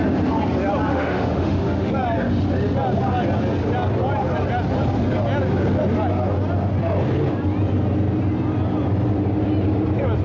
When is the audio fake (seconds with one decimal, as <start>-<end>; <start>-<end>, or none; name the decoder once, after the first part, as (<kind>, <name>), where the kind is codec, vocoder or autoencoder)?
0.9-1.9 (autoencoder, DAC-VAE)